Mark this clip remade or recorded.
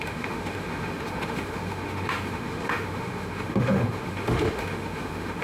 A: remade